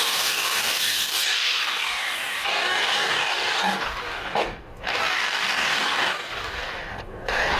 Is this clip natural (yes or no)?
no